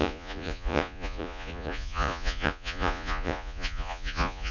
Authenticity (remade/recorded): remade